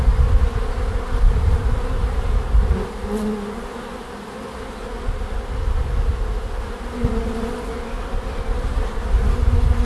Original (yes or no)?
yes